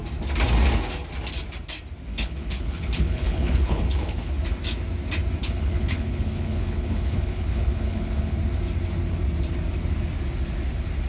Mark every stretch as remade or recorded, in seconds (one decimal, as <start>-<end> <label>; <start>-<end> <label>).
0.0-2.1 recorded; 2.1-4.3 remade; 4.3-5.4 recorded; 5.4-8.4 remade; 8.4-11.1 recorded